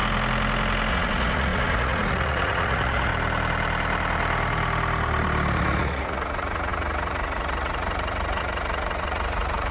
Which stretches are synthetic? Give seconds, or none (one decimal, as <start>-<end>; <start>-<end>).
0.9-3.1; 5.5-9.7